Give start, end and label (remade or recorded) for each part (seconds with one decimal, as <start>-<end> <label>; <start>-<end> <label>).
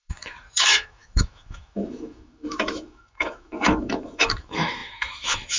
0.0-5.6 remade